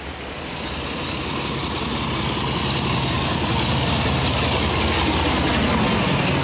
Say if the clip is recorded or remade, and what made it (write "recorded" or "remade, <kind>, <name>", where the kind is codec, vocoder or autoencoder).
recorded